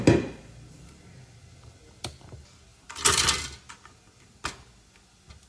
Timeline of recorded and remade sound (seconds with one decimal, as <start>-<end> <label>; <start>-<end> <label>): 0.0-5.5 recorded

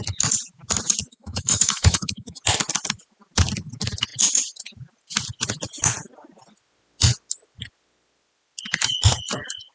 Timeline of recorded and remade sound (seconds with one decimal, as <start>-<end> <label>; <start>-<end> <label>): 0.0-1.1 recorded; 1.1-2.4 remade; 2.4-9.7 recorded